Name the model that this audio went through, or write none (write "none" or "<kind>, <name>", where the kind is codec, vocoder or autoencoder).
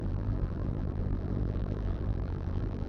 vocoder, BigVGAN v2